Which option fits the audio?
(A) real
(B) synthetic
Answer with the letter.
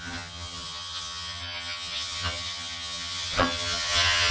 B